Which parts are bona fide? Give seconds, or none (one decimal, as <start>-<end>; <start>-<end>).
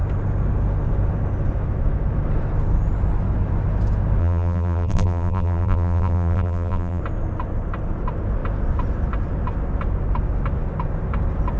0.0-4.2; 7.0-11.6